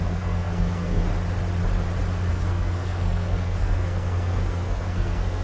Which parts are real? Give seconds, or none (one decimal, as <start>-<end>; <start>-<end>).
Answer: 1.1-2.3